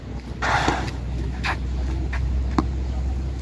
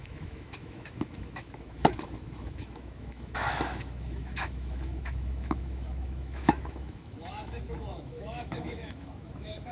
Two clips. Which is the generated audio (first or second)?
second